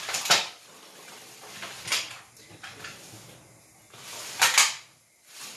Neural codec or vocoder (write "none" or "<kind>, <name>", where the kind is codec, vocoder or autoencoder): none